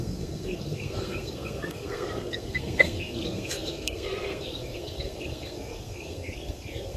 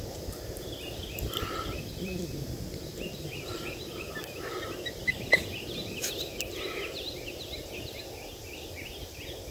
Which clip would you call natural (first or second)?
second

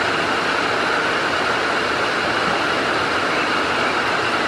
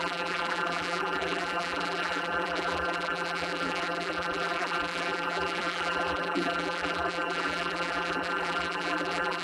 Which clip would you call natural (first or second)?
first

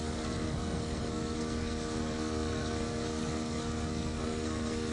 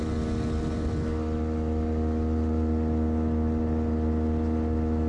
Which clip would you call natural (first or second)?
second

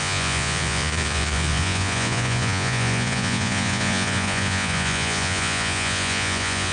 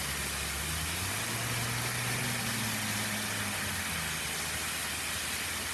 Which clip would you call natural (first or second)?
second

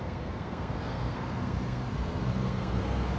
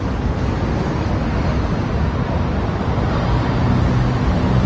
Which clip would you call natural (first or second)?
second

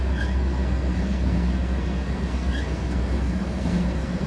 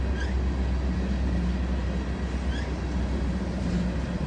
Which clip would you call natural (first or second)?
second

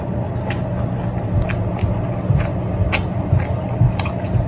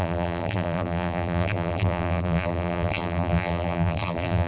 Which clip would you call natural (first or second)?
first